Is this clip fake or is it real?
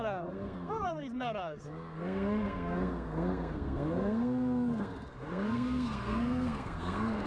fake